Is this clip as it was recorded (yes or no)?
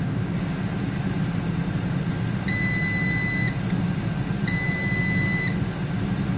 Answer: yes